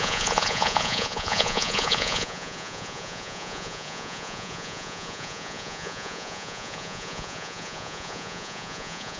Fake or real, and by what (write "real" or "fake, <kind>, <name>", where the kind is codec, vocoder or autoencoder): fake, vocoder, Vocos